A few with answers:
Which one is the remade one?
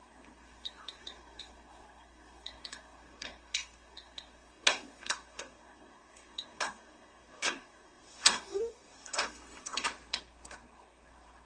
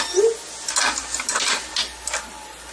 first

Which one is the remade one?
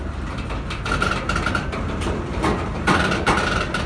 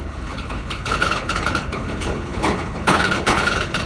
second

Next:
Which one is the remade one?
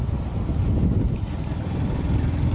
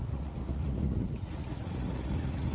second